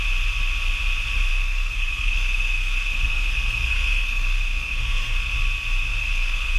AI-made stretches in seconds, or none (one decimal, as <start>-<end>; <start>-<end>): 1.3-5.3; 5.9-6.6